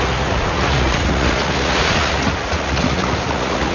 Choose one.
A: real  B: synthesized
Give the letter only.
B